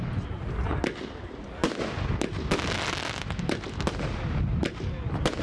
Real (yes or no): yes